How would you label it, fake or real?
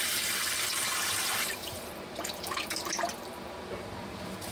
fake